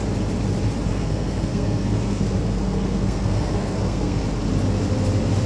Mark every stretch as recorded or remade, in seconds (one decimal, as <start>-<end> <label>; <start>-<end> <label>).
0.0-0.9 recorded; 0.9-4.2 remade; 4.2-5.5 recorded